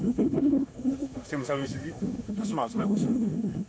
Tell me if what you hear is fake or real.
fake